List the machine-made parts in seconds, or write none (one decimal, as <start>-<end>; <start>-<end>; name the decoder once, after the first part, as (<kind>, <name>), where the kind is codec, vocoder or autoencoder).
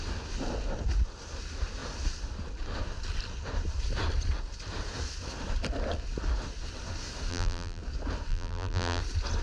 7.3-7.8 (vocoder, BigVGAN v2); 8.3-9.0